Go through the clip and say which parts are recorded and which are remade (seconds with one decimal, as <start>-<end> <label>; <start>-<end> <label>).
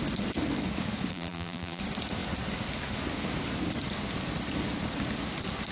0.0-1.1 recorded; 1.1-1.8 remade; 1.8-5.7 recorded